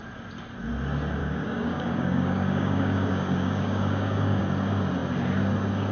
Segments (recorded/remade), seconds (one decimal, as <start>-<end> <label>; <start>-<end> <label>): 0.0-1.2 recorded; 1.2-4.4 remade; 4.4-5.9 recorded